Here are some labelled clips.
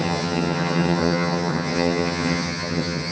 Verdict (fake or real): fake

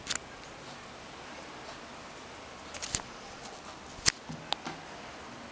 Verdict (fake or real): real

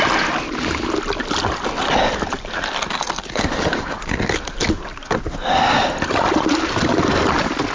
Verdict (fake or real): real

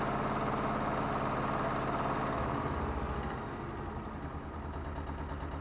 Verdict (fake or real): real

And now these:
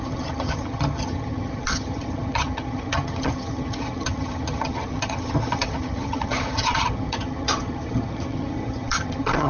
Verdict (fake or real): fake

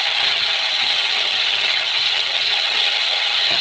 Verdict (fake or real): fake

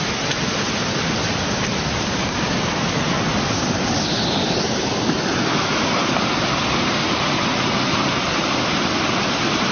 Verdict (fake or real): real